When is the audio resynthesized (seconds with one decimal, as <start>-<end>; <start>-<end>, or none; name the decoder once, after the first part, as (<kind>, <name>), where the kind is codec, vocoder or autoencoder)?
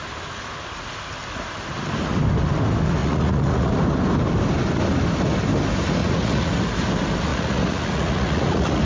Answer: 3.0-3.7 (vocoder, Vocos); 6.0-6.5; 7.3-8.8